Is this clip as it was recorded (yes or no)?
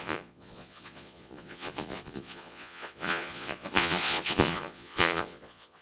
no